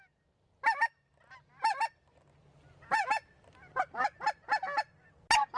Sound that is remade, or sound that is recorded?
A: recorded